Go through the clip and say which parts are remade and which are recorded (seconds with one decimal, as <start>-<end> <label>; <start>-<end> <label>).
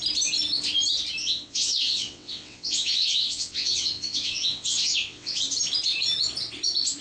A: 0.0-1.2 recorded; 1.2-5.4 remade; 5.4-7.0 recorded